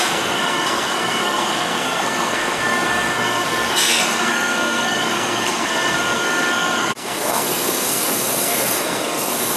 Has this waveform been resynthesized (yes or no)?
yes